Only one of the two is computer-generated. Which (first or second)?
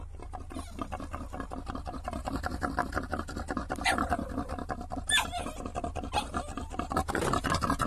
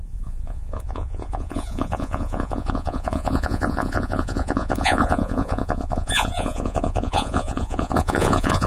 second